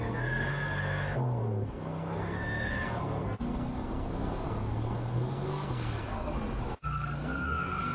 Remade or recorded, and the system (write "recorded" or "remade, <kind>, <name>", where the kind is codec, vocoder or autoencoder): remade, codec, SNAC